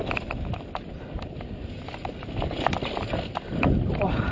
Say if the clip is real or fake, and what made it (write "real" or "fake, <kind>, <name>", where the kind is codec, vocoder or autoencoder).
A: real